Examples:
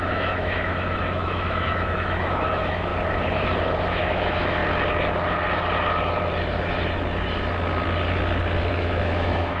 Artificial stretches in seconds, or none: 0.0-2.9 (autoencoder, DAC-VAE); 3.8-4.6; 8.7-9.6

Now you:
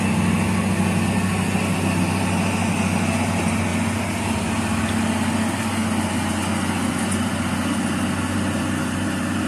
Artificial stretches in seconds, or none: none